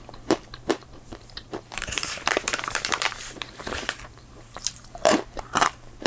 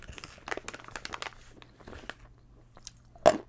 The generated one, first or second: first